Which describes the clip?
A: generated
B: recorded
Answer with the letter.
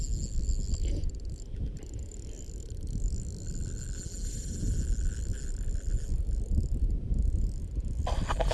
B